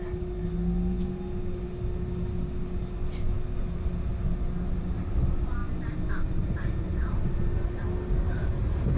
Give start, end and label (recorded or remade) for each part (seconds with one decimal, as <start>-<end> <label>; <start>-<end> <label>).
0.0-9.0 recorded